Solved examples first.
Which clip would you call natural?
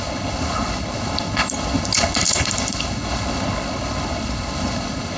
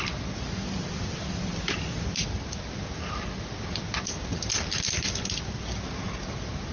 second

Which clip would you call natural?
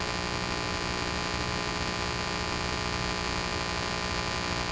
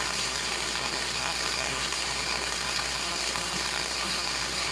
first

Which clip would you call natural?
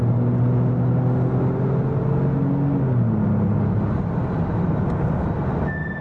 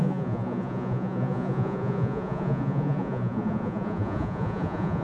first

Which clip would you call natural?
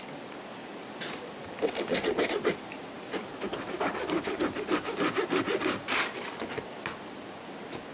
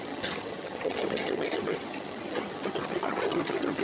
first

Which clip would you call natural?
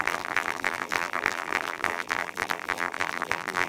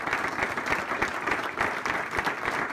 second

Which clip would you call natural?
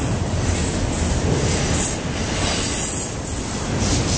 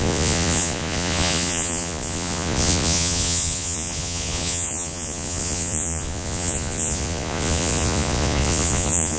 first